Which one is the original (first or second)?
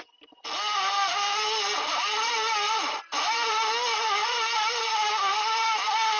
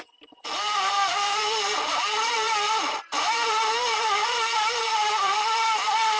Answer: first